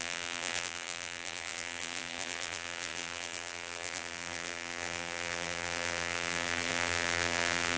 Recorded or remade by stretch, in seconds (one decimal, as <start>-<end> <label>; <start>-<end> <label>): 0.0-7.8 remade